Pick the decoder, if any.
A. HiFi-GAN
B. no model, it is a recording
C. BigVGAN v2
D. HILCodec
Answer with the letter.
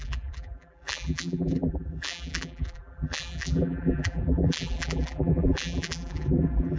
C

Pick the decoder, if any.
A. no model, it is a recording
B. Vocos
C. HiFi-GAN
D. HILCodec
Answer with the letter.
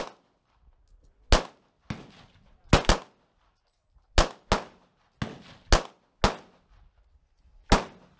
A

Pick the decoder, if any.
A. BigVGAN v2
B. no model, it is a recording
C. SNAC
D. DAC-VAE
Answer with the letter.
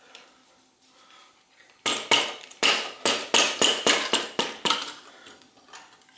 B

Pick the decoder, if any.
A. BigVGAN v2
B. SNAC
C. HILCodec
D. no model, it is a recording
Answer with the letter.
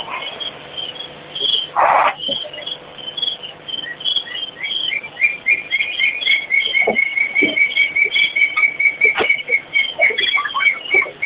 D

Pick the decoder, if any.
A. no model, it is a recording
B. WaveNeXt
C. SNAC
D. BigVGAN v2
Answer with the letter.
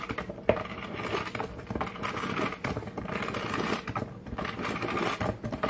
A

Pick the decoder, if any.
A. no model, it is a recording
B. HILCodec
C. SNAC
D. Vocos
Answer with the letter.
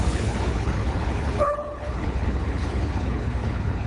B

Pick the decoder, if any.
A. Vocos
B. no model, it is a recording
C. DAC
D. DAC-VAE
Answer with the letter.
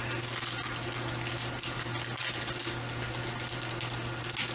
B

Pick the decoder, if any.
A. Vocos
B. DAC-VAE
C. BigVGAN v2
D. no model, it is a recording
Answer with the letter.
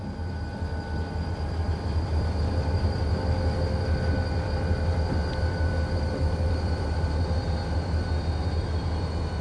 D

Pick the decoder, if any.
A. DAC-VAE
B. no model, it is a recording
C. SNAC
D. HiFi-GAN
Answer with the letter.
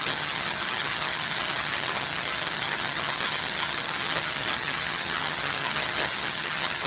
D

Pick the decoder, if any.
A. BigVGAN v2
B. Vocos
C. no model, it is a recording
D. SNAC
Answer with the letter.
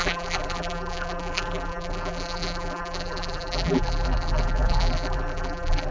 A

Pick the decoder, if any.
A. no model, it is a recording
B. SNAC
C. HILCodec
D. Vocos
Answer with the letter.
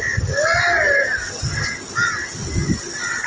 A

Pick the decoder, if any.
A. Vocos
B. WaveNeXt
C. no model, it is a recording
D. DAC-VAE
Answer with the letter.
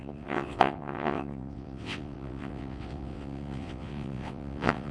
B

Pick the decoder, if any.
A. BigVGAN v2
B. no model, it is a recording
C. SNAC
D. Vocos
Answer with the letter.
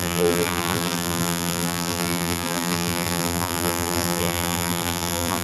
A